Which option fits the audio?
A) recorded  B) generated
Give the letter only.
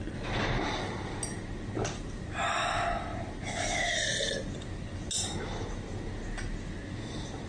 A